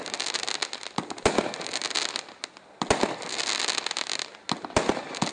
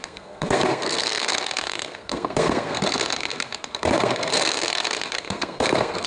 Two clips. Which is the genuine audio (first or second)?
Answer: first